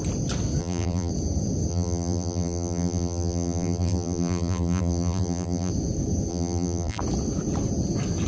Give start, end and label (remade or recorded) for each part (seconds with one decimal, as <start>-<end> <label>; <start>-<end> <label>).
0.0-0.6 recorded; 0.6-1.1 remade; 1.1-1.7 recorded; 1.7-5.7 remade; 5.7-6.3 recorded; 6.3-7.0 remade; 7.0-8.3 recorded